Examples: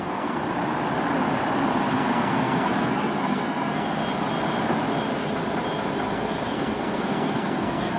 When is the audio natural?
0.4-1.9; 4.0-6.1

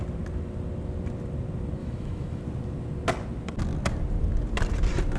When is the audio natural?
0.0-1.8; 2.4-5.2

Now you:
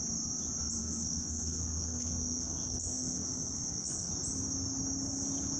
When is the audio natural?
0.0-0.8; 4.1-5.6